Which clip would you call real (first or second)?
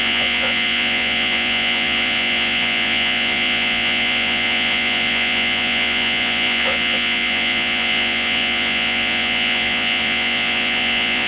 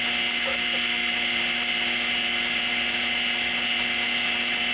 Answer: second